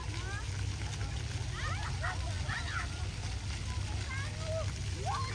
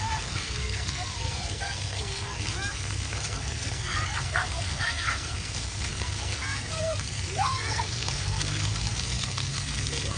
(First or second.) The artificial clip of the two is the second